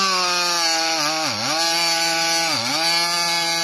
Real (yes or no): yes